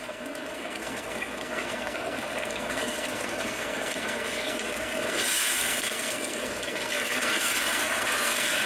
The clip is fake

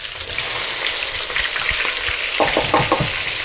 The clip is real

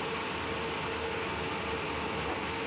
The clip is real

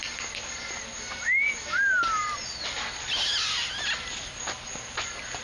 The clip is real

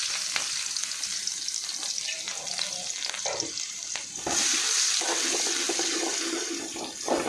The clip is real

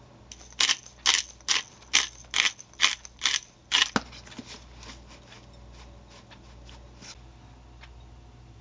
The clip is real